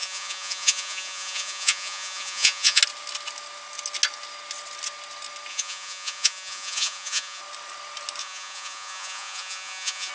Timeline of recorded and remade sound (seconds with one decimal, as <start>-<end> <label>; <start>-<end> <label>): 0.0-2.8 remade; 2.8-5.5 recorded; 5.5-7.4 remade; 7.4-8.2 recorded; 8.2-10.1 remade